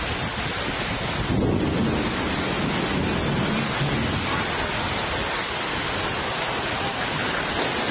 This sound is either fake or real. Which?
real